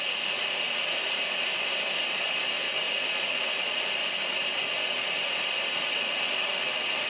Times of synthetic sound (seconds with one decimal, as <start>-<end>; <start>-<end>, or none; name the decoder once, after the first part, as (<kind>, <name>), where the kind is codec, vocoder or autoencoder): 0.0-1.5 (vocoder, Vocos); 2.9-4.0; 5.8-7.1